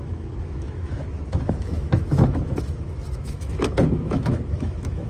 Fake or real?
fake